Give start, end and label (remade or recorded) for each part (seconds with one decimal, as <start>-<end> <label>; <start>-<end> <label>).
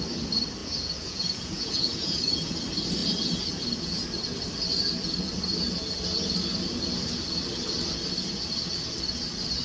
0.0-0.6 recorded; 0.6-2.5 remade; 2.5-9.6 recorded